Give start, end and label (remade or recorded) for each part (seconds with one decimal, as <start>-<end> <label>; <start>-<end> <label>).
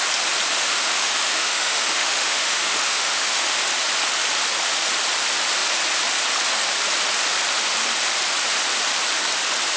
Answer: 0.0-0.6 recorded; 0.6-3.6 remade; 3.6-9.8 recorded